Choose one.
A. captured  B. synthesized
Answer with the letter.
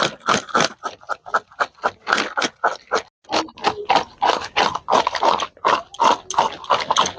A